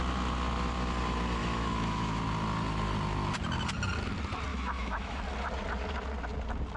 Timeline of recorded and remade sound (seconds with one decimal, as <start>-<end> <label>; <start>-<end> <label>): 0.0-1.4 recorded; 1.4-2.2 remade; 2.2-4.5 recorded; 4.5-5.2 remade; 5.2-6.8 recorded